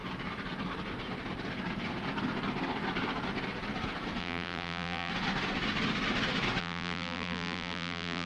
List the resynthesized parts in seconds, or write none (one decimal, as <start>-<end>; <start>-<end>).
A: 4.2-5.1; 6.6-8.3